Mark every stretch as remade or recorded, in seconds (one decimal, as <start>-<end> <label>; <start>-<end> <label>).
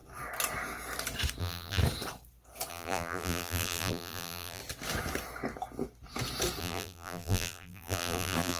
0.0-1.4 recorded; 1.4-1.8 remade; 1.8-2.7 recorded; 2.7-4.6 remade; 4.6-6.6 recorded; 6.6-8.6 remade